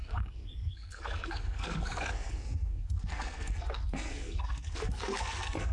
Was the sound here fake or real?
fake